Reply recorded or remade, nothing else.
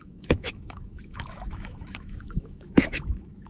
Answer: remade